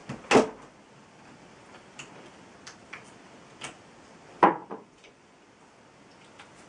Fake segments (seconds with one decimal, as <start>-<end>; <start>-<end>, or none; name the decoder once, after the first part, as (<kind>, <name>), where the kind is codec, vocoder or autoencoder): 4.6-5.4 (vocoder, Vocos)